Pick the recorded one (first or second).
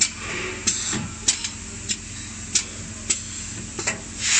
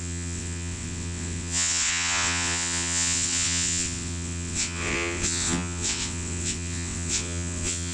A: first